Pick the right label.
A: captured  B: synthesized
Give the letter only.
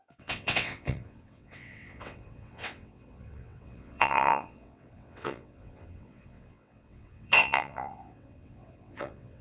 B